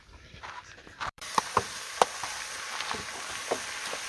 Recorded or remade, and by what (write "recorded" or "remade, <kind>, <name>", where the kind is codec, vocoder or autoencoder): remade, vocoder, BigVGAN v2